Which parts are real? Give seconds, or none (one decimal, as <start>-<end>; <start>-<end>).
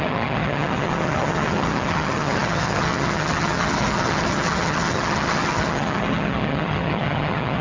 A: none